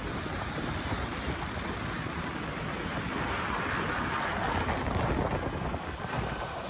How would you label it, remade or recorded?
recorded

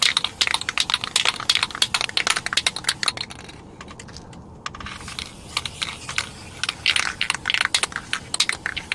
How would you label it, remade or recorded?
recorded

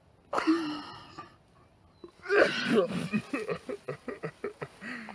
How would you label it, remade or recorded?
recorded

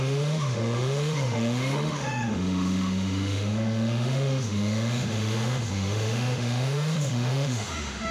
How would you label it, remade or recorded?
remade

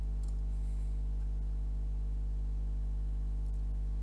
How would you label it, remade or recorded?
recorded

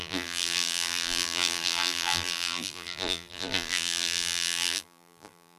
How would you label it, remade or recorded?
remade